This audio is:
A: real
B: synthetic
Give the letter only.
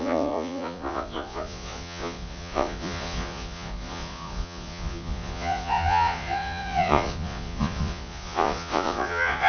B